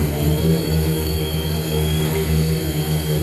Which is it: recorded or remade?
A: remade